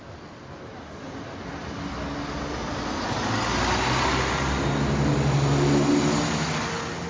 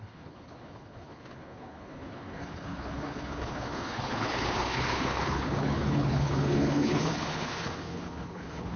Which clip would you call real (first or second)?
first